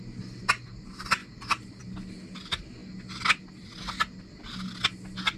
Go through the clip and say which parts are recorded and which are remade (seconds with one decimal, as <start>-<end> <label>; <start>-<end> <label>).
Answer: 0.0-1.2 recorded; 1.2-1.8 remade; 1.8-5.4 recorded